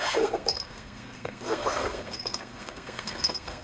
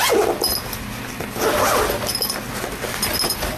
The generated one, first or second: first